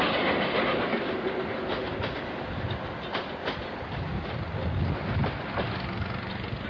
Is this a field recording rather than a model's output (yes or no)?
yes